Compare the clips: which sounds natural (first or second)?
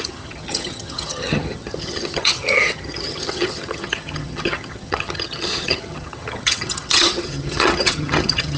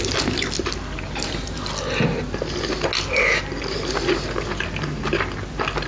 second